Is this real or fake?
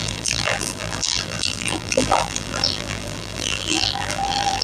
fake